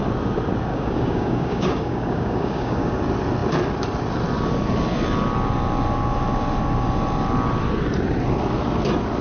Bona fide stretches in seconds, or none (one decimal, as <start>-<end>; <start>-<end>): 0.0-0.7; 3.0-9.2